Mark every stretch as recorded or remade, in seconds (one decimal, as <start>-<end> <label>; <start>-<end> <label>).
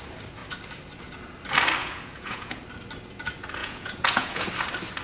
0.0-1.8 recorded; 1.8-2.6 remade; 2.6-3.6 recorded; 3.6-4.5 remade; 4.5-5.0 recorded